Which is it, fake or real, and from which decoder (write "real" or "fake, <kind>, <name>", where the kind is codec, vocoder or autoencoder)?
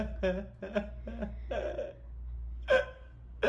real